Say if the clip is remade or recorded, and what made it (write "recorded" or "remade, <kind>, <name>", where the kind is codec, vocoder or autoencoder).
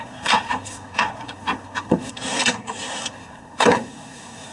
remade, codec, SNAC